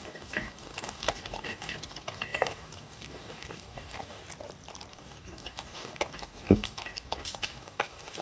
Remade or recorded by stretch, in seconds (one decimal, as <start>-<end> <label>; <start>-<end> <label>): 0.0-4.2 remade; 4.2-4.9 recorded; 4.9-8.2 remade